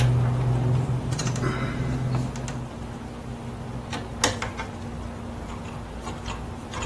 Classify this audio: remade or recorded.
recorded